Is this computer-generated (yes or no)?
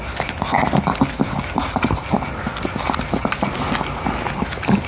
no